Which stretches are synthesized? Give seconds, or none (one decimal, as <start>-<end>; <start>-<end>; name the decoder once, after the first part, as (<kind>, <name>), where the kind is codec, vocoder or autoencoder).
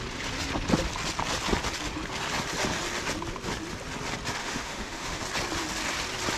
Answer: 4.4-5.2 (autoencoder, DAC-VAE)